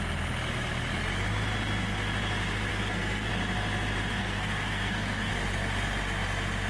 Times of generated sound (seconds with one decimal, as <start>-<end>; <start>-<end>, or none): 2.7-3.3; 4.2-5.3